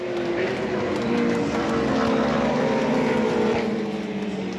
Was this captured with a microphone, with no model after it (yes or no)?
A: yes